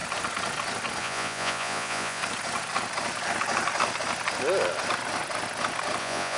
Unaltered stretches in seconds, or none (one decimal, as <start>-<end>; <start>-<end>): 0.0-1.0; 2.2-6.0